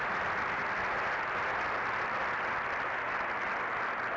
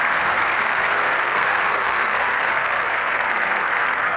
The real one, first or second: first